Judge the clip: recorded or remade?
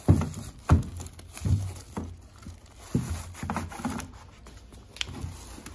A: recorded